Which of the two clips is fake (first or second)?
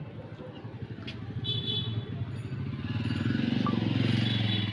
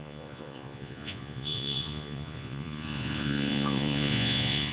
second